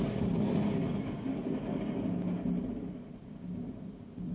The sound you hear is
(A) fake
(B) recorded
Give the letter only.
B